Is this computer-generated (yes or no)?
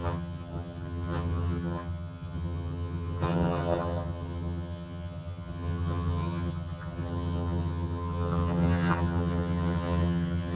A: yes